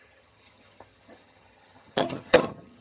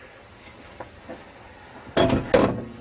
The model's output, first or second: first